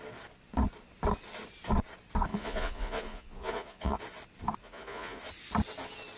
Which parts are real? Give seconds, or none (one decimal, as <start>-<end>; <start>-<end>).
0.0-2.3; 4.0-4.6; 5.2-6.2